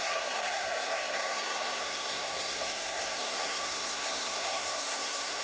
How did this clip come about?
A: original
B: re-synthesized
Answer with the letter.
B